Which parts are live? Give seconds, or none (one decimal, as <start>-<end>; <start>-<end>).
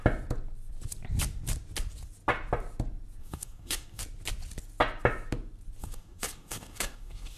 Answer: 0.0-3.2; 4.0-5.8